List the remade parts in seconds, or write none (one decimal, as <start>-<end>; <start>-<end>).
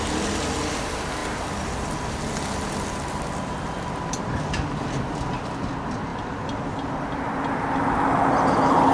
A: none